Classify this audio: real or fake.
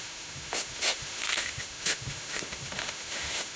fake